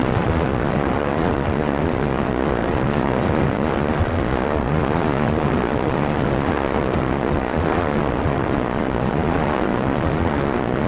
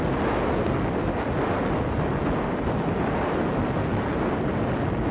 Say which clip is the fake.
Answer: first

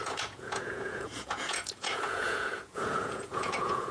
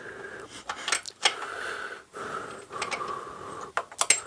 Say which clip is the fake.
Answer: first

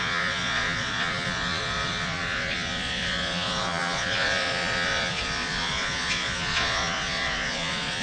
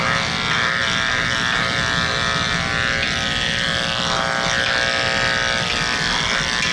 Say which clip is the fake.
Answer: first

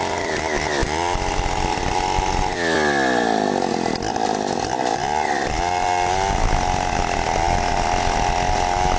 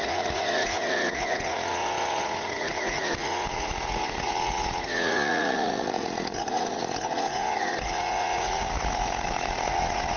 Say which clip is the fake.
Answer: second